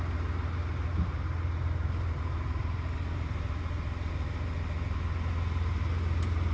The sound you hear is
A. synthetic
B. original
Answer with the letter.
B